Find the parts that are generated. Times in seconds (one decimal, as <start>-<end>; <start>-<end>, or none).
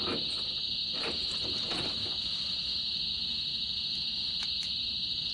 none